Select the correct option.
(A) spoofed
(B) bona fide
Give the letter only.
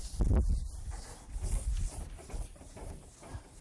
B